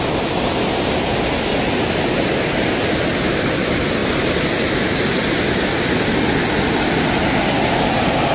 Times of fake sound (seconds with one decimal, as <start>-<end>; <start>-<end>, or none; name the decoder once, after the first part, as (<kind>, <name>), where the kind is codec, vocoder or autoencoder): none